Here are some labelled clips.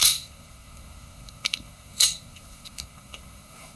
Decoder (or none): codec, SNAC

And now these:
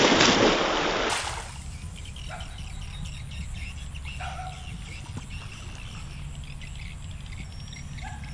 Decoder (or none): none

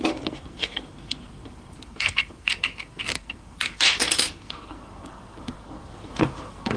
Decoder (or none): codec, SNAC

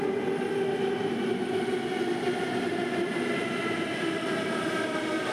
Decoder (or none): none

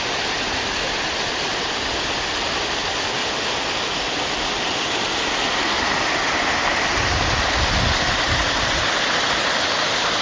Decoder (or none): none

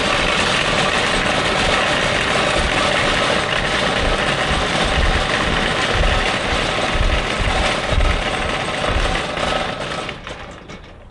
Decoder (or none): none